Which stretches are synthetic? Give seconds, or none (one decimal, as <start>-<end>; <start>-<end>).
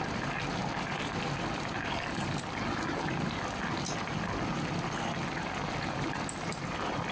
none